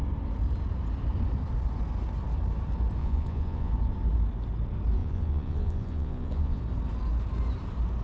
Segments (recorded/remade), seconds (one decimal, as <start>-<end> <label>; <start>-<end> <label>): 0.0-3.0 recorded; 3.0-3.7 remade; 3.7-5.0 recorded; 5.0-6.6 remade; 6.6-8.0 recorded